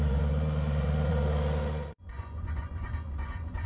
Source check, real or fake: fake